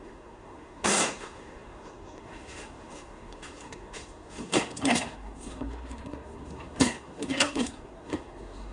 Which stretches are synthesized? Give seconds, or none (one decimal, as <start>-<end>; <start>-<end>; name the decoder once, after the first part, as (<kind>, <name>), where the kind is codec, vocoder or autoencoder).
0.0-8.7 (codec, SNAC)